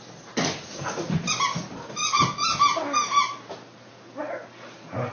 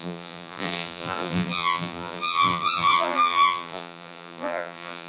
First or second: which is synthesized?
second